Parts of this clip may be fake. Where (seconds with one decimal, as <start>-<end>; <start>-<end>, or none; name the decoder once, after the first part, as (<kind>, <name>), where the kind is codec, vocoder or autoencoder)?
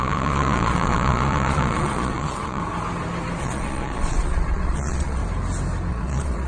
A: 0.0-2.6 (vocoder, Vocos); 3.4-5.2; 5.9-6.5